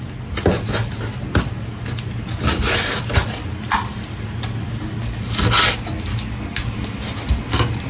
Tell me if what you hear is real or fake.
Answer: real